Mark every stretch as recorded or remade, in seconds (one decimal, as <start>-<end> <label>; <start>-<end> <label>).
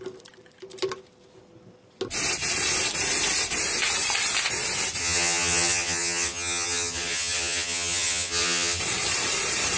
0.0-5.0 recorded; 5.0-8.8 remade; 8.8-9.8 recorded